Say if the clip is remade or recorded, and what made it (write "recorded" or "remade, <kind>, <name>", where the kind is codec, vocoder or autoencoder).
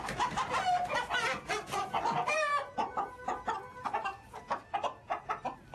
recorded